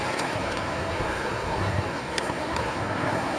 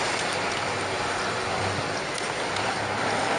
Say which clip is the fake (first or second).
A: first